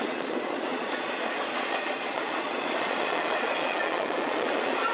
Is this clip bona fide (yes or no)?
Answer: no